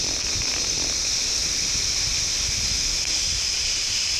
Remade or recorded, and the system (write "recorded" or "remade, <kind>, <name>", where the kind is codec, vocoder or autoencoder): recorded